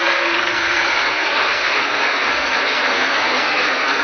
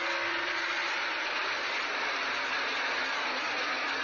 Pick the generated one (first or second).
first